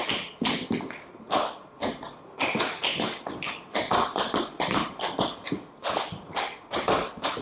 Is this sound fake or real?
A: fake